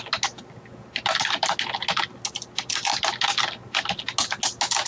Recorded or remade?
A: recorded